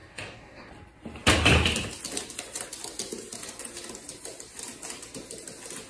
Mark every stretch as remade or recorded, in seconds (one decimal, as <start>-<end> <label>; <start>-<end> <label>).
0.0-0.7 remade; 0.7-5.9 recorded